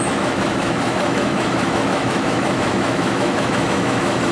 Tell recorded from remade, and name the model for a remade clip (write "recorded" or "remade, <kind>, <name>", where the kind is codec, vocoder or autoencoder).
remade, autoencoder, DAC-VAE